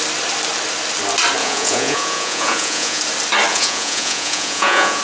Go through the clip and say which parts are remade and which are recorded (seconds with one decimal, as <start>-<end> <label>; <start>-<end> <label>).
0.0-1.4 recorded; 1.4-3.0 remade; 3.0-3.5 recorded; 3.5-5.0 remade